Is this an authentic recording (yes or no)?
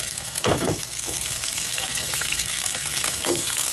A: no